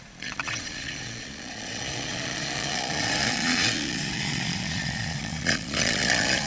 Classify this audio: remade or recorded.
remade